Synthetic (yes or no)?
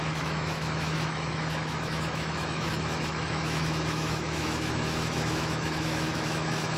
yes